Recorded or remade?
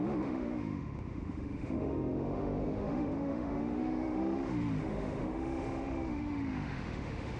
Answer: remade